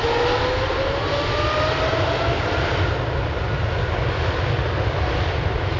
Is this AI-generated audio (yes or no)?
no